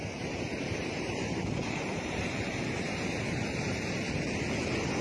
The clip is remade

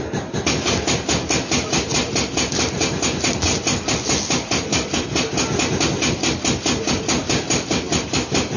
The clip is recorded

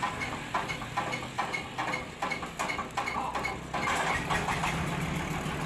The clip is recorded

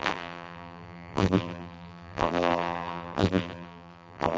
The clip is remade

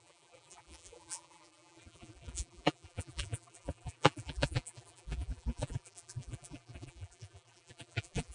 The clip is remade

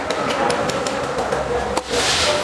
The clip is recorded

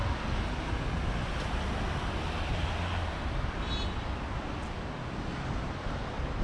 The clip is recorded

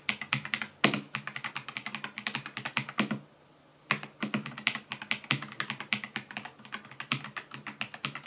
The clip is recorded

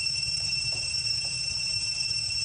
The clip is remade